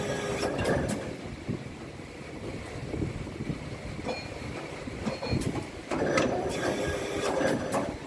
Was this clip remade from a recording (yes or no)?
yes